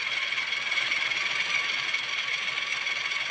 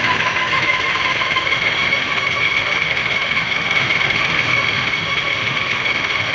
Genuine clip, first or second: first